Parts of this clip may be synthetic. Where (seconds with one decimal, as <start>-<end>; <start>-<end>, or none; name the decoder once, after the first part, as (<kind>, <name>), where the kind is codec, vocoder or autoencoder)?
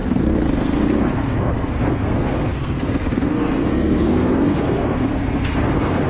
0.0-6.1 (codec, SNAC)